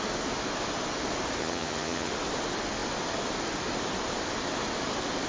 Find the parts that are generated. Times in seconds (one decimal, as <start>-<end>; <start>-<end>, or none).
1.4-2.1

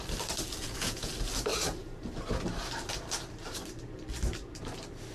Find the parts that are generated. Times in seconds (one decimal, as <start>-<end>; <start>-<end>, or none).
0.6-1.1